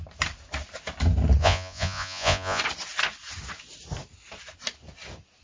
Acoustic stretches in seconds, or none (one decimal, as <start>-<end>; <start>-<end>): 0.0-1.4; 2.6-5.4